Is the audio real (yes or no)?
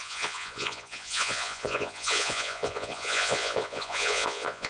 no